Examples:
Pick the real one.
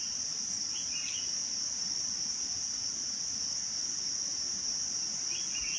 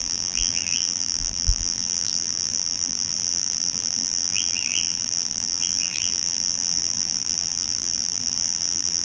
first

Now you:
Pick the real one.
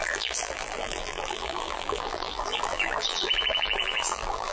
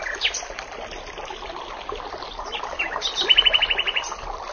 second